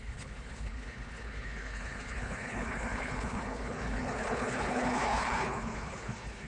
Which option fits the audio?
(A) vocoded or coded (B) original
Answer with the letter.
A